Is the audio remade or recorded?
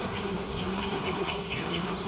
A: remade